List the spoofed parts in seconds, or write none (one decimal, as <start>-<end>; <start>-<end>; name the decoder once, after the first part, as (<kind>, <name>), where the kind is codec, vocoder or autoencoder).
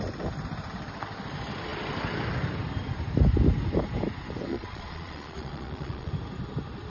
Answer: 4.5-6.1 (vocoder, Vocos)